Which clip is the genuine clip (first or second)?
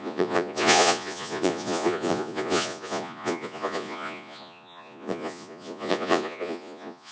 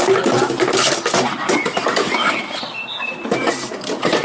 second